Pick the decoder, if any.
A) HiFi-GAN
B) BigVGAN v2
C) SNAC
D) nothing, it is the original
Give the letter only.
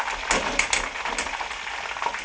D